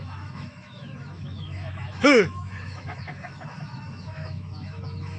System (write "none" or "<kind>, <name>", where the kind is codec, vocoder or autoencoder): autoencoder, DAC-VAE